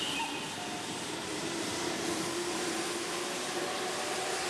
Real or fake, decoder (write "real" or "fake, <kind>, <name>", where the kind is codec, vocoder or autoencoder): real